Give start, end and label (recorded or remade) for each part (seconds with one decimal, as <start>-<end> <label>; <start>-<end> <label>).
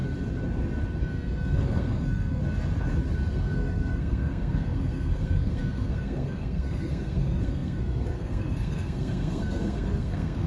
0.0-1.0 recorded; 1.0-2.4 remade; 2.4-3.3 recorded; 3.3-10.5 remade